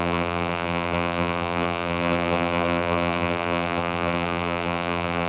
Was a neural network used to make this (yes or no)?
yes